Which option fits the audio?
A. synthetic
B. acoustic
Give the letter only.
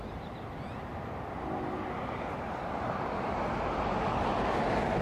B